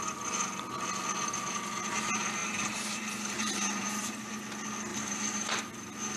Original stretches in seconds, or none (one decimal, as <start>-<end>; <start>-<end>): 0.0-2.4; 4.0-4.9; 5.6-6.2